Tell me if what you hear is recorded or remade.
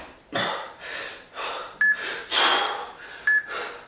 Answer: recorded